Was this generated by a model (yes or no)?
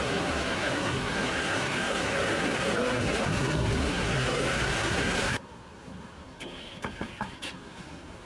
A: yes